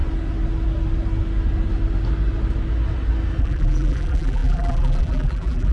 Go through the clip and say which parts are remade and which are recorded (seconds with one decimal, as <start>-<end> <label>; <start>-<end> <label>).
0.0-3.4 recorded; 3.4-5.7 remade